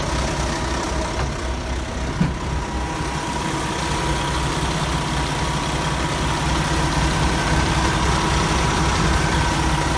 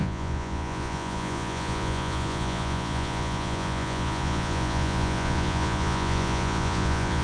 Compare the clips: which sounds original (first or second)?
first